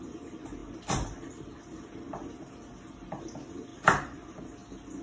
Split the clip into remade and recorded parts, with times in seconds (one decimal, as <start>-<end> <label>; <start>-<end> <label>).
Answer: 0.0-5.0 recorded

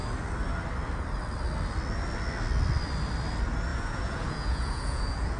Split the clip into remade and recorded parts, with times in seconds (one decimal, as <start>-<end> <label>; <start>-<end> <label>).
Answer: 0.0-3.7 recorded; 3.7-5.4 remade

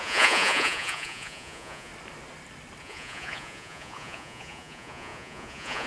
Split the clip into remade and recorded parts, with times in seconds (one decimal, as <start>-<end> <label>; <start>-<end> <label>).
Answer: 0.0-1.9 remade; 1.9-2.8 recorded; 2.8-5.9 remade